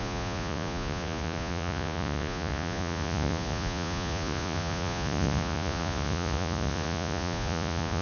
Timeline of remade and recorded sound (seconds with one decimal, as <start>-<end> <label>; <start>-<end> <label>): 0.0-8.0 remade